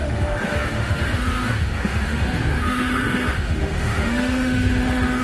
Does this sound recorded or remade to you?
remade